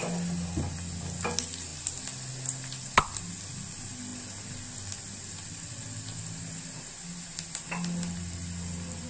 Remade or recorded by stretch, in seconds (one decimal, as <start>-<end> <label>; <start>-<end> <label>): 0.0-9.1 recorded